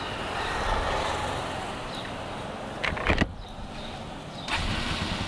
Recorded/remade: recorded